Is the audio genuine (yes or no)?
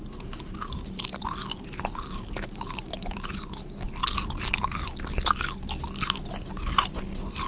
yes